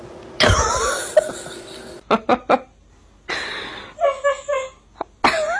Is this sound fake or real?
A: real